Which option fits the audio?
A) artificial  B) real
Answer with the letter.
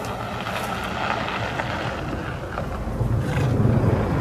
B